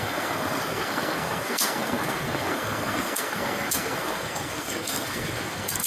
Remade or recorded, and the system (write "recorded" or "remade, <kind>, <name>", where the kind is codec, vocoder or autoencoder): remade, codec, SNAC